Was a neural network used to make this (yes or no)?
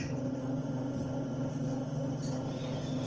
no